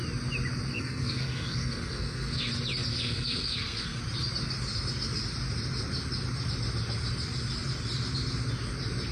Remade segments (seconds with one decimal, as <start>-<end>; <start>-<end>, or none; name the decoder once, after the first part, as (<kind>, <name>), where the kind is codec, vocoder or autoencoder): 0.7-2.5 (codec, SNAC); 2.9-4.0